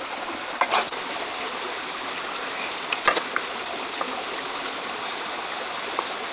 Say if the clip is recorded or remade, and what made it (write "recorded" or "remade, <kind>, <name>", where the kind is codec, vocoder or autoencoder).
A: recorded